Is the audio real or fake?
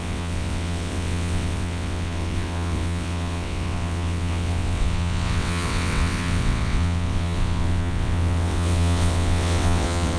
fake